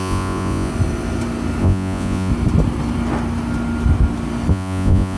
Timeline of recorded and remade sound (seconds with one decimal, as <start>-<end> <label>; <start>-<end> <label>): 0.0-0.7 remade; 0.7-1.6 recorded; 1.6-2.3 remade; 2.3-4.5 recorded; 4.5-5.2 remade